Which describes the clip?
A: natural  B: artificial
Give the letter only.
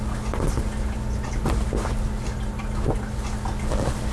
A